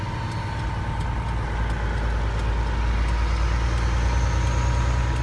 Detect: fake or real real